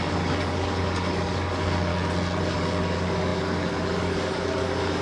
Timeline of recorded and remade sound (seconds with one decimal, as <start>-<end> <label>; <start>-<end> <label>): 0.0-1.9 remade; 1.9-2.4 recorded; 2.4-5.0 remade